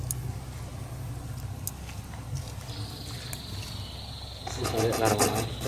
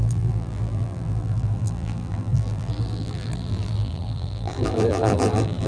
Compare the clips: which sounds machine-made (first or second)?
second